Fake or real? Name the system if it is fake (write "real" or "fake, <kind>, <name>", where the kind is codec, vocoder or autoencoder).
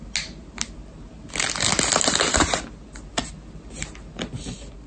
real